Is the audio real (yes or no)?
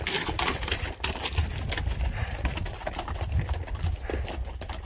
yes